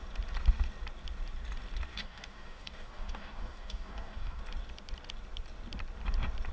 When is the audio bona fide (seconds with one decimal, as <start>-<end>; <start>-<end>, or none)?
0.0-1.9; 4.4-6.5